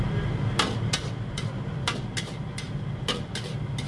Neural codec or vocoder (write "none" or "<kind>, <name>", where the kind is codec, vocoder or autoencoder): none